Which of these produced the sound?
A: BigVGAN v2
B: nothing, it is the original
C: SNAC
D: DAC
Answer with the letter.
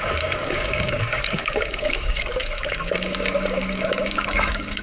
D